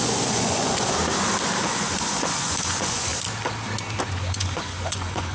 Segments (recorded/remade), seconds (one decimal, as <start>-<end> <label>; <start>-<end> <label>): 0.0-1.0 remade; 1.0-1.7 recorded; 1.7-3.1 remade; 3.1-4.0 recorded; 4.0-5.3 remade